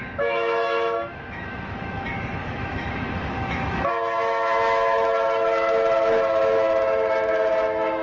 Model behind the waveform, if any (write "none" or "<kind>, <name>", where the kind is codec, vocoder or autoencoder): autoencoder, DAC-VAE